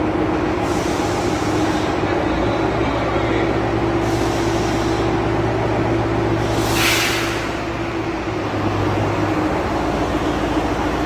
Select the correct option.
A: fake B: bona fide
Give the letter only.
B